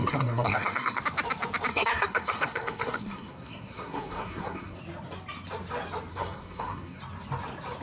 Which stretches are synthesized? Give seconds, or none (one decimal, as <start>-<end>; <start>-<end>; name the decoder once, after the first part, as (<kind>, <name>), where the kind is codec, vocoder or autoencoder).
0.0-1.0 (codec, SNAC); 1.7-4.8; 6.1-7.0